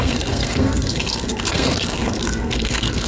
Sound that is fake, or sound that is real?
fake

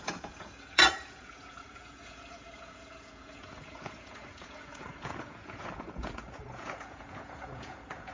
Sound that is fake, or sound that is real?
fake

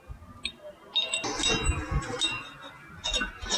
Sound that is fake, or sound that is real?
real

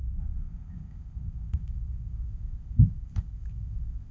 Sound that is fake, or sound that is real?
fake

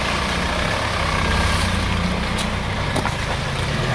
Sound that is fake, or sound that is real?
real